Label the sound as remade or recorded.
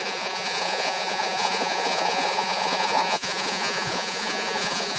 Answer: remade